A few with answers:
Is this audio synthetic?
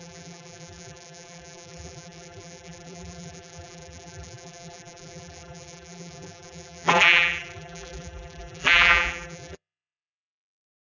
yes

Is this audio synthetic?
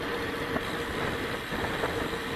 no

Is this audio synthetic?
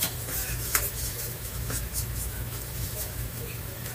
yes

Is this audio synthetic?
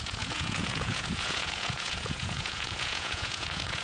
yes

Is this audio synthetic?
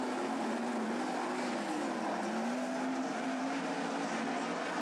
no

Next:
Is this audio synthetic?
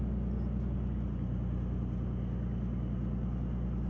no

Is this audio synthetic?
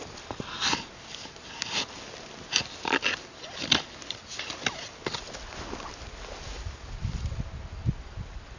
no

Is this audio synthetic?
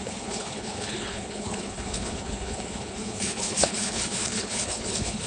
yes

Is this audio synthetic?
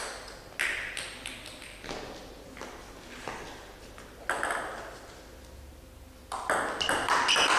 no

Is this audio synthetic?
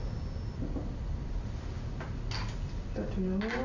no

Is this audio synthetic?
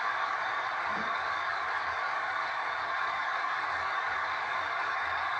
yes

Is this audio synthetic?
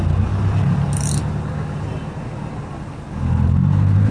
no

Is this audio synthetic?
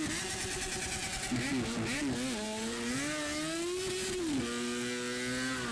no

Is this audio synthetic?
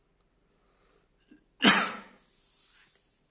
no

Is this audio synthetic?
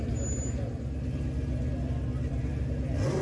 no